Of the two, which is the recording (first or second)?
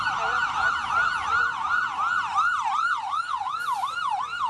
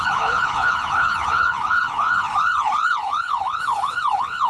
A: first